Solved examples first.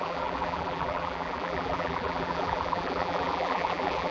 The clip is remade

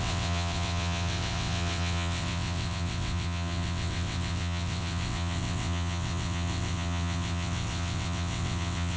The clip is remade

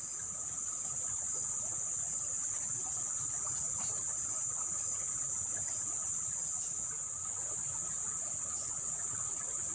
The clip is remade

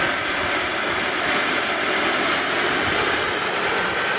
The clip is recorded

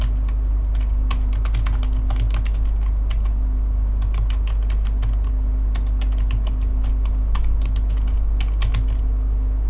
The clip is recorded